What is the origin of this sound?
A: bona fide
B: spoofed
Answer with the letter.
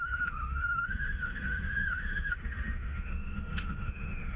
B